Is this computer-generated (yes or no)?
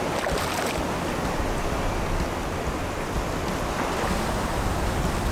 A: no